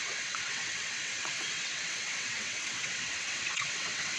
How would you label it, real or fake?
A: fake